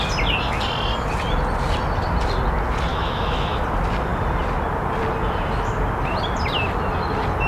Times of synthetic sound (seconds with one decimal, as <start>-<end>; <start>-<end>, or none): 2.9-3.6

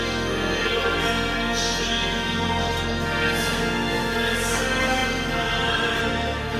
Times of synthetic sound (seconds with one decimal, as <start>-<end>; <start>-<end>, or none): 0.0-6.6

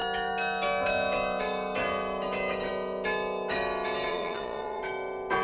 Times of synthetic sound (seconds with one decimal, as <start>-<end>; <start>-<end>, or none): 4.1-4.8

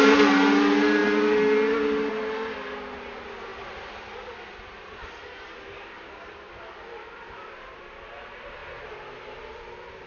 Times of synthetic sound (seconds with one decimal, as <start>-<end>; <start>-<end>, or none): 3.5-5.2; 8.6-9.4